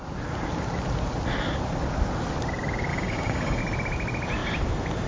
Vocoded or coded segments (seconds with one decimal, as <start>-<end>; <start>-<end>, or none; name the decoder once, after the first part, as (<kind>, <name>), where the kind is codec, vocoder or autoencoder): 2.9-3.6 (codec, DAC)